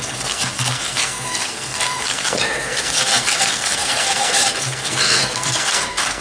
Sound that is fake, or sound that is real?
fake